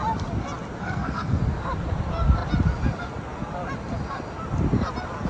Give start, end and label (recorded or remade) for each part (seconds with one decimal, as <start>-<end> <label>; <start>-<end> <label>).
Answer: 0.0-0.8 recorded; 0.8-1.4 remade; 1.4-5.3 recorded